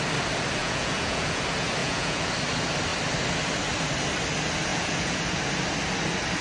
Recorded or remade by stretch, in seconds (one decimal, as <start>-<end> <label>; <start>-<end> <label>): 0.0-0.6 recorded; 0.6-1.4 remade; 1.4-1.8 recorded; 1.8-2.3 remade; 2.3-4.7 recorded; 4.7-5.2 remade; 5.2-6.4 recorded